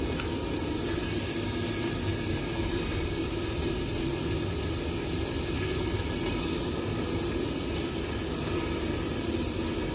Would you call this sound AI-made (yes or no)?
no